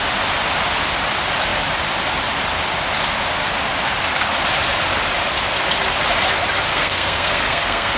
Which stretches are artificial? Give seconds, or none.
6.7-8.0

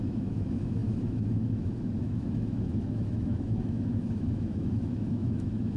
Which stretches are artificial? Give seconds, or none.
0.0-5.8

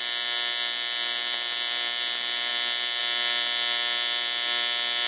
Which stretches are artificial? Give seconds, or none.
none